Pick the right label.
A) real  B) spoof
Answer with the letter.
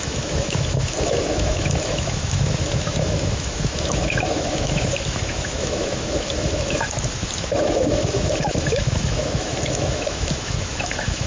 B